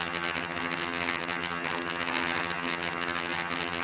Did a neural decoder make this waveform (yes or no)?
yes